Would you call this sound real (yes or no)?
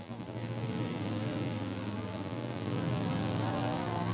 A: no